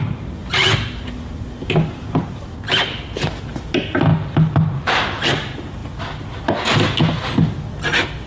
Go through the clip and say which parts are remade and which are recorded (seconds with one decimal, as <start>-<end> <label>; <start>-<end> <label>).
0.0-8.3 recorded